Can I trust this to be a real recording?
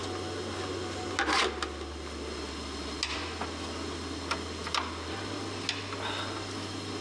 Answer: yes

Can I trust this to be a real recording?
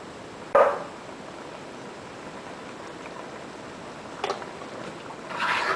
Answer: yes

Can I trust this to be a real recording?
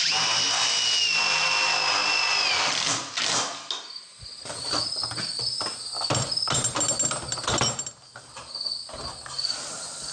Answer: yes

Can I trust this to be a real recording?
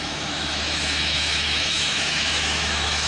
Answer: no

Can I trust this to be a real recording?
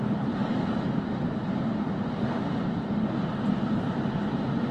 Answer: yes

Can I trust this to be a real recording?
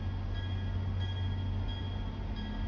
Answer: yes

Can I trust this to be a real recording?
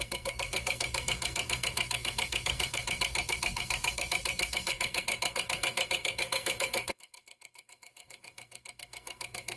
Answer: no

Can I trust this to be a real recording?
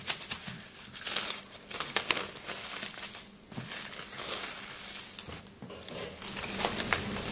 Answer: yes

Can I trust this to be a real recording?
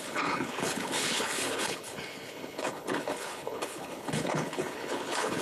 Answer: no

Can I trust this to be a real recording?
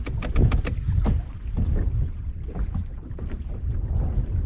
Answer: yes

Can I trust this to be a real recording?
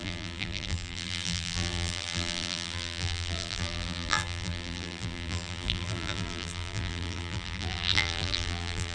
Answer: no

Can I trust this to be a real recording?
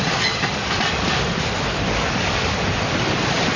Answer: yes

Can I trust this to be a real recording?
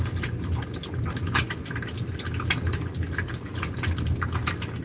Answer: yes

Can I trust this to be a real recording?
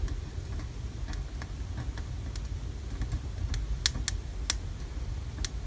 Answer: yes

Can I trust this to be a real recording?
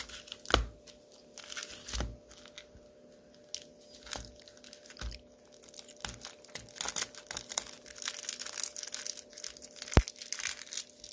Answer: yes